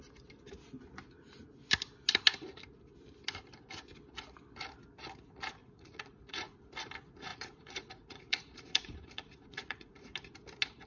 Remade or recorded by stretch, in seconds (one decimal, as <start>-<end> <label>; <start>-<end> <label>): 0.0-5.6 recorded; 5.6-6.7 remade; 6.7-7.3 recorded; 7.3-10.0 remade; 10.0-10.9 recorded